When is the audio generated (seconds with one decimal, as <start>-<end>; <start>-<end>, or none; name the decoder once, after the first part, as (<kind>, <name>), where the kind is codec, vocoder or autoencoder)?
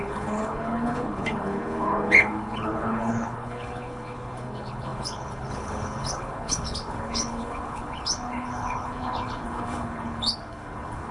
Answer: 0.0-11.1 (codec, HILCodec)